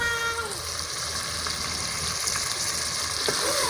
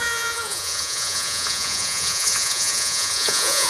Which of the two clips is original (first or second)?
first